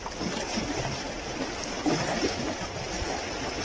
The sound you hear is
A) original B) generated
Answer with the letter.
A